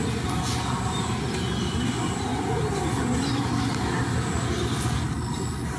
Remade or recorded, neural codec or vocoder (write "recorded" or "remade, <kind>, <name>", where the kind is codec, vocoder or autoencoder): recorded